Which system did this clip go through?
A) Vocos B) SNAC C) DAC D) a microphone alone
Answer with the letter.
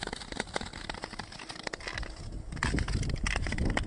D